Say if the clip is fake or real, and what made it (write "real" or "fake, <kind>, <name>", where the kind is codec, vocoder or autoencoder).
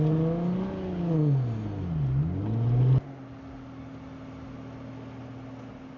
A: real